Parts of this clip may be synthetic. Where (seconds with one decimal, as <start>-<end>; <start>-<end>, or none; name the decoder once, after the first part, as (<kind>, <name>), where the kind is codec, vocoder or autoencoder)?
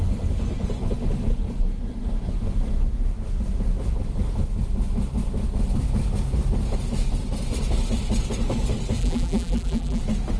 9.0-10.0 (vocoder, BigVGAN v2)